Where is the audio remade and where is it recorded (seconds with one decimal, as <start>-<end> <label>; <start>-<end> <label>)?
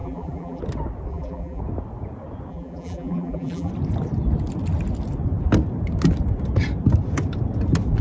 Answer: 0.0-0.6 remade; 0.6-1.1 recorded; 1.1-1.6 remade; 1.6-2.5 recorded; 2.5-3.7 remade; 3.7-8.0 recorded